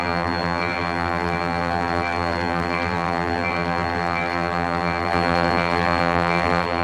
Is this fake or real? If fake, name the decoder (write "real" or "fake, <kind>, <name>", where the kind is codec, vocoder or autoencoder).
fake, vocoder, BigVGAN v2